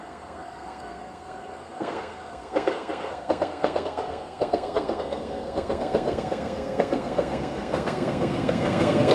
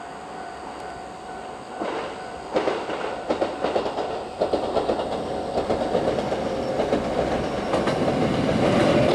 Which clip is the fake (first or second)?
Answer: first